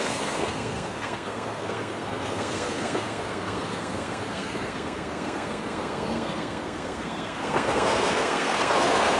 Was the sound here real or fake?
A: fake